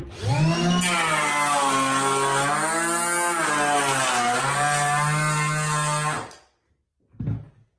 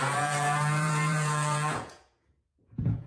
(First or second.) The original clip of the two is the first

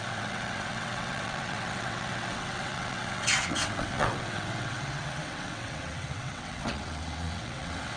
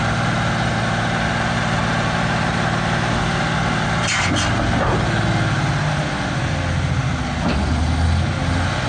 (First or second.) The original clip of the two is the second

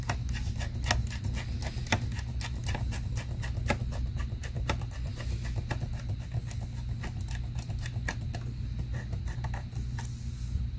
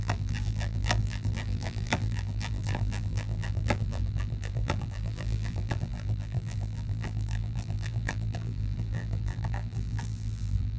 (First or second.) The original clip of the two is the first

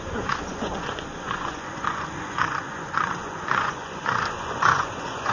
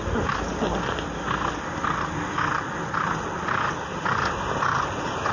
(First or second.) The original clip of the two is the second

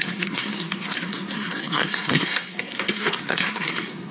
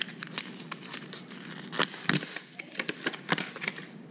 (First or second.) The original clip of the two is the second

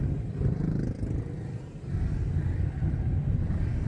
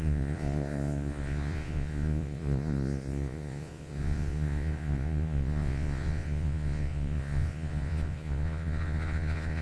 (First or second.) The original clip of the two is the first